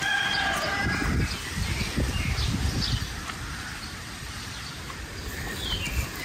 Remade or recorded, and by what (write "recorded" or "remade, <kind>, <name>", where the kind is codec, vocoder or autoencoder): recorded